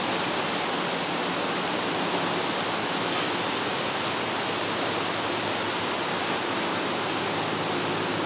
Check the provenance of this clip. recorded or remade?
recorded